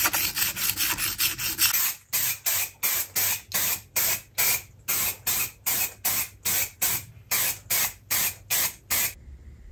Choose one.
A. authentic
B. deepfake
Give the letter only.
A